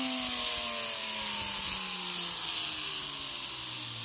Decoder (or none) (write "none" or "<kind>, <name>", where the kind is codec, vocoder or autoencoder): none